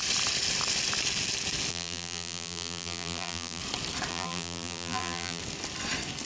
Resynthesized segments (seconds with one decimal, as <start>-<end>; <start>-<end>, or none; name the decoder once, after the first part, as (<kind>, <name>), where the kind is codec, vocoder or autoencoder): 1.7-3.6 (vocoder, BigVGAN v2); 4.1-5.4